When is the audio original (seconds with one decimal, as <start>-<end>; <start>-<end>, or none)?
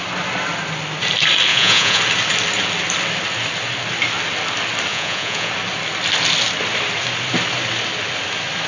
0.0-1.5; 2.0-4.9; 5.5-8.7